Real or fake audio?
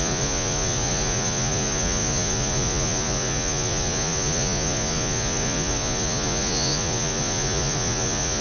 fake